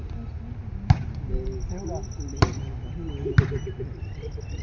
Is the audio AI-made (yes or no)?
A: no